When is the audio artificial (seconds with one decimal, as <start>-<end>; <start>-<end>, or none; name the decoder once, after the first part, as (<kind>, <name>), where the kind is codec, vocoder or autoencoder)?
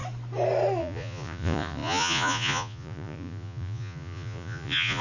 0.8-5.0 (vocoder, Vocos)